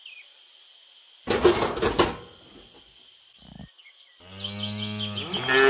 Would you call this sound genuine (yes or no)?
yes